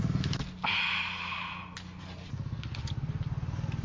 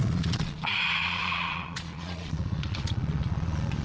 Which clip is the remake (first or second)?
second